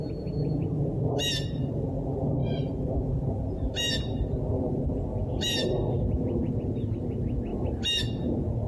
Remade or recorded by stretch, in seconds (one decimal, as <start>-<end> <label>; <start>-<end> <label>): 0.0-7.5 recorded; 7.5-8.0 remade; 8.0-8.7 recorded